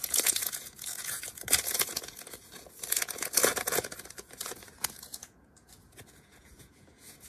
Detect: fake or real fake